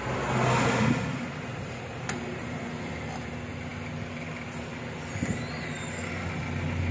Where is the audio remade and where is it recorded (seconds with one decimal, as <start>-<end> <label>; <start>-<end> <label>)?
0.0-1.5 recorded; 1.5-2.7 remade; 2.7-6.9 recorded